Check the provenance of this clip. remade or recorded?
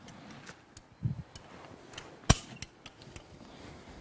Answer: recorded